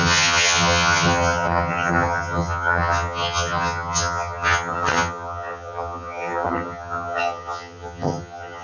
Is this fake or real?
fake